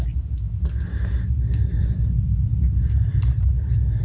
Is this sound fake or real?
real